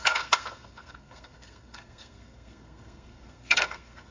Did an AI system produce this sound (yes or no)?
yes